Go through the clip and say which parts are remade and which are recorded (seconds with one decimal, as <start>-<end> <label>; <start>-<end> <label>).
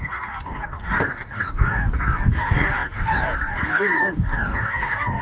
0.0-5.2 remade